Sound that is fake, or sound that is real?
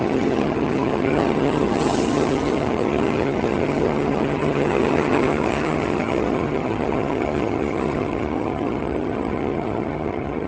fake